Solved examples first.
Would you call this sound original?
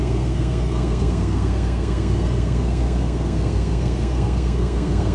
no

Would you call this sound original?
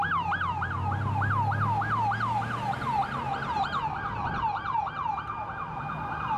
yes